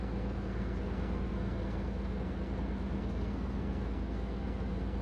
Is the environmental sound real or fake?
fake